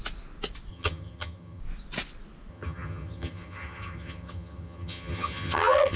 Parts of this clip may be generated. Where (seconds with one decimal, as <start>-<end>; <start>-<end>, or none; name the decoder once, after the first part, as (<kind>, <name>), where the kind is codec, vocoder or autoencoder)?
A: 0.7-1.6 (vocoder, HiFi-GAN); 2.5-6.0